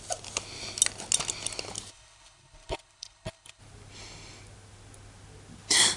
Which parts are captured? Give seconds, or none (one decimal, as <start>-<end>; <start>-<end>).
0.0-1.9; 3.6-6.0